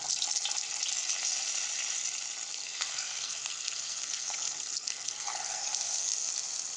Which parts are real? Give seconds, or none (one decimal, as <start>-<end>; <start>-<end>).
0.0-2.5; 6.3-6.8